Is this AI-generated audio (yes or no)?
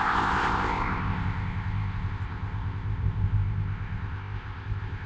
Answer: yes